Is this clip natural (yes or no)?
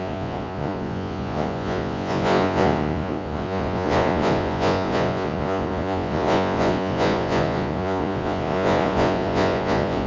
no